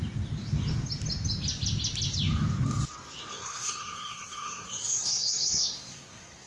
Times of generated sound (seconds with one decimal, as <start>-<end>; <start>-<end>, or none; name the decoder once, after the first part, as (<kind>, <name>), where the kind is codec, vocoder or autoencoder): 3.3-6.5 (codec, SNAC)